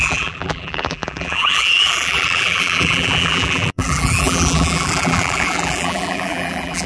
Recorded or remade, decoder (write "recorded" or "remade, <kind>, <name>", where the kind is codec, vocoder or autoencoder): remade, vocoder, BigVGAN v2